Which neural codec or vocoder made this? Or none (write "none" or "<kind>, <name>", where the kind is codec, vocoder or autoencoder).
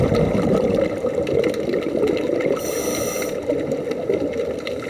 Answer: none